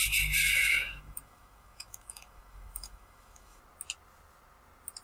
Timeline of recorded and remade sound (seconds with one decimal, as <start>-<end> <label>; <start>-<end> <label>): 0.0-0.6 recorded; 0.6-3.6 remade; 3.6-5.0 recorded